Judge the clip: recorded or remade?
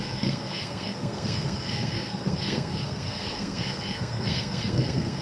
remade